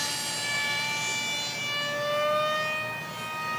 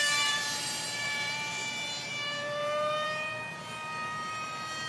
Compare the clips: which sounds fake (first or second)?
second